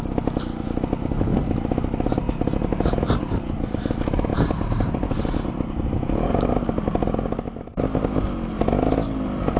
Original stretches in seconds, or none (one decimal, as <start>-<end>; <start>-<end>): 0.0-4.3; 6.5-9.6